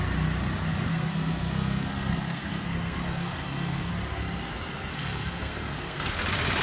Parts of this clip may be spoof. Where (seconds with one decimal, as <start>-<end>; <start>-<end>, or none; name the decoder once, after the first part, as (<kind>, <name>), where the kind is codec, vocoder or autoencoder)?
0.9-3.9 (codec, SNAC); 4.9-6.1